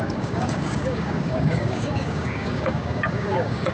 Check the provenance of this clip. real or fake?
fake